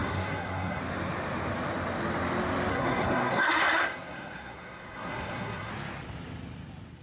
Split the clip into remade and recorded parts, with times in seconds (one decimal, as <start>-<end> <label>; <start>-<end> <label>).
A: 0.0-0.8 remade; 0.8-2.7 recorded; 2.7-5.7 remade; 5.7-7.0 recorded